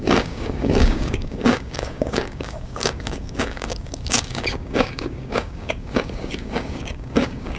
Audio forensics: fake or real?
fake